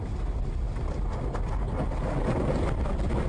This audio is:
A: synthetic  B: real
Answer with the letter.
B